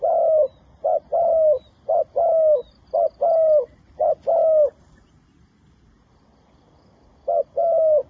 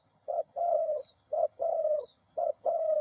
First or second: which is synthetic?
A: second